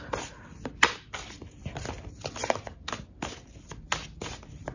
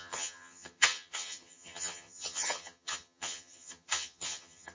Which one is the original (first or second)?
first